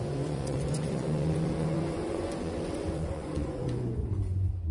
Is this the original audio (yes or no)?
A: no